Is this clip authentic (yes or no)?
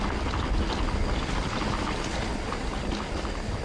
yes